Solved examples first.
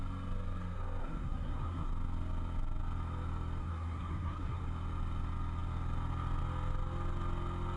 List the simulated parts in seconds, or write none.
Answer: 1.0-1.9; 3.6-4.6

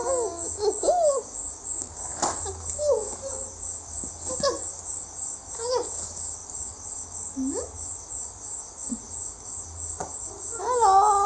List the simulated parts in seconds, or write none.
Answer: none

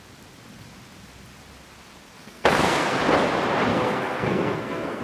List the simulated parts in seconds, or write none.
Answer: 2.2-3.0; 3.7-5.0

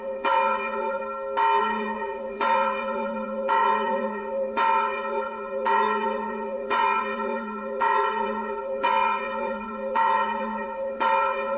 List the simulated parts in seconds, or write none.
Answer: 0.0-1.0; 1.6-11.6

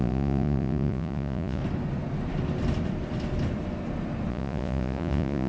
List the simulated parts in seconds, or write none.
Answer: 0.0-1.6; 4.3-5.5

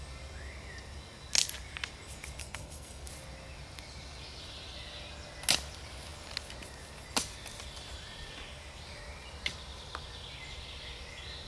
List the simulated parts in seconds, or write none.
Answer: 2.4-3.1

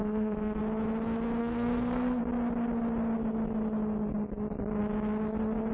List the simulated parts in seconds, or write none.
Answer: 0.0-0.6; 1.4-2.2